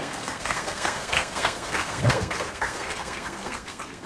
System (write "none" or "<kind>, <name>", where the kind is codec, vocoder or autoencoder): codec, SNAC